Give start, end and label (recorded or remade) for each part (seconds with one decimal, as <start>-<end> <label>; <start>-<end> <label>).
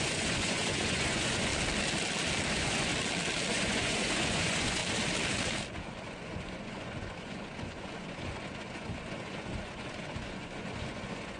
0.0-1.5 remade; 1.5-2.5 recorded; 2.5-2.9 remade; 2.9-3.5 recorded; 3.5-4.8 remade; 4.8-5.8 recorded; 5.8-11.4 remade